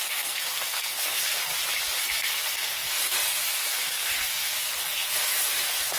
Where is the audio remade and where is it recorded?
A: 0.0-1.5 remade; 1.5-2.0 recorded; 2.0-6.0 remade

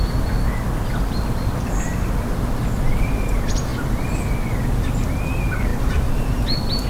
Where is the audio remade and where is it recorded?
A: 0.0-6.9 recorded

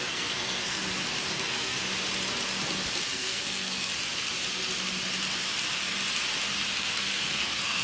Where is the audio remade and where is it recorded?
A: 0.0-0.8 remade; 0.8-1.3 recorded; 1.3-1.8 remade; 1.8-3.1 recorded; 3.1-3.9 remade; 3.9-6.8 recorded; 6.8-7.8 remade

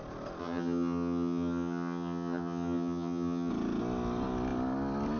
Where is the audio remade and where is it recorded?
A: 0.0-0.4 recorded; 0.4-3.5 remade; 3.5-5.2 recorded

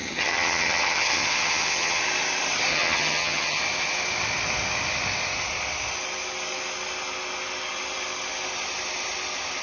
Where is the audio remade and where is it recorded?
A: 0.0-2.0 remade; 2.0-2.7 recorded; 2.7-3.6 remade; 3.6-9.6 recorded

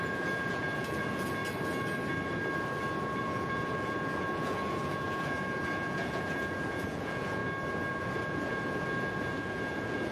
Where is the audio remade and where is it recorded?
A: 0.0-1.4 remade; 1.4-3.2 recorded; 3.2-7.4 remade; 7.4-7.9 recorded; 7.9-10.1 remade

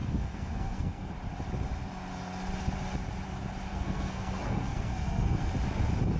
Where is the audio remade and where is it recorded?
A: 0.0-1.1 remade; 1.1-3.7 recorded; 3.7-5.5 remade; 5.5-6.2 recorded

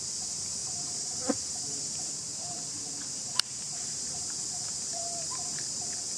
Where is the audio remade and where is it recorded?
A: 0.0-0.6 recorded; 0.6-4.3 remade; 4.3-6.2 recorded